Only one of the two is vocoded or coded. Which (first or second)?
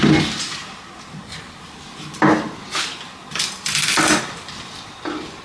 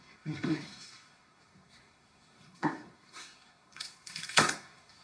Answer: second